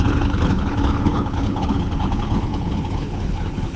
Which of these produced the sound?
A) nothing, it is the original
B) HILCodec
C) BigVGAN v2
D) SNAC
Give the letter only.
B